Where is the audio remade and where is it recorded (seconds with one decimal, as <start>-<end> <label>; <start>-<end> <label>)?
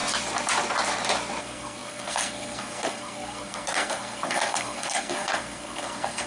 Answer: 0.0-1.4 recorded; 1.4-6.3 remade